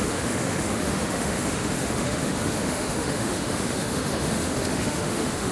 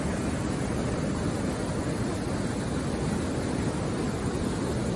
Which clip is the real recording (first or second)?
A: second